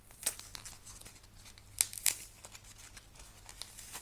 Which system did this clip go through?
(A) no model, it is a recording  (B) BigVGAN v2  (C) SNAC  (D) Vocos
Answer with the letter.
A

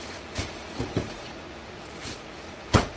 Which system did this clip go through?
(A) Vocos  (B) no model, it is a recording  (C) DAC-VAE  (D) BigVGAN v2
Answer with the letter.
A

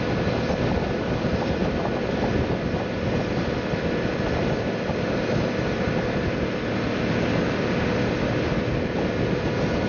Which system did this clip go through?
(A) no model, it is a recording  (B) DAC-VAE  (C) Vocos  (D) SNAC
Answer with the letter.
A